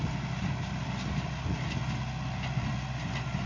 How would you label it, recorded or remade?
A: recorded